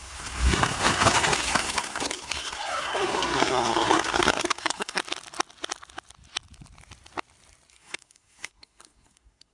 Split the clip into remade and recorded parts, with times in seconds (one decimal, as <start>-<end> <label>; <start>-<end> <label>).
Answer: 0.0-5.0 remade; 5.0-7.7 recorded; 7.7-9.5 remade